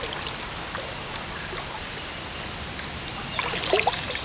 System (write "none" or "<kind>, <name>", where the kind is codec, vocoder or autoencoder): none